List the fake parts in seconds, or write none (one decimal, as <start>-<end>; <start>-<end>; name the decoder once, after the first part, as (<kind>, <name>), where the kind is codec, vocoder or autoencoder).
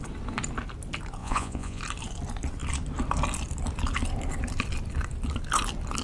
1.2-1.8 (vocoder, Vocos)